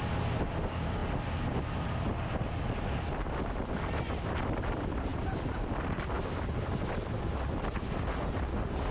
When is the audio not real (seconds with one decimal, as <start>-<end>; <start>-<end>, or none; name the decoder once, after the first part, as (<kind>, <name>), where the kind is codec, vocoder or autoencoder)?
none